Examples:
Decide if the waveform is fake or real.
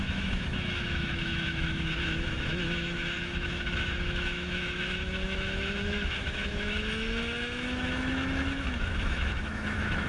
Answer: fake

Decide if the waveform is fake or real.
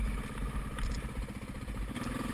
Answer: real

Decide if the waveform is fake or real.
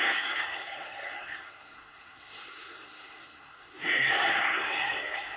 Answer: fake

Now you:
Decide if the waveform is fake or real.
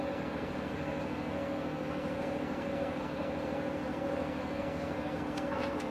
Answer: fake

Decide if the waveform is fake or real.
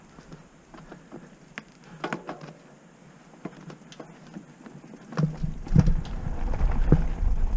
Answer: real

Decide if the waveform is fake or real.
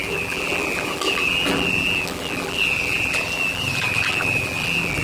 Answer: fake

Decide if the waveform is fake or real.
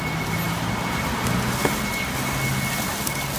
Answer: real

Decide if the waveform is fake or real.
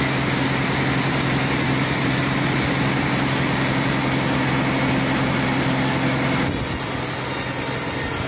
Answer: real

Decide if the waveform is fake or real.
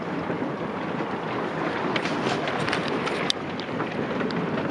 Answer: real